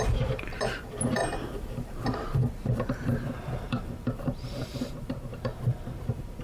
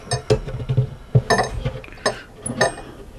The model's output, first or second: first